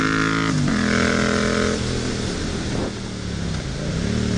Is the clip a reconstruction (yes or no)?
no